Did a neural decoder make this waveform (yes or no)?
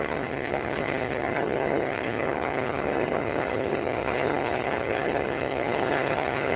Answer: yes